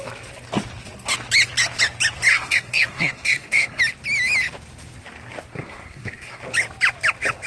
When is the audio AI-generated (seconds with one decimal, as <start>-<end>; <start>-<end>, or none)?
2.3-3.8; 5.5-6.4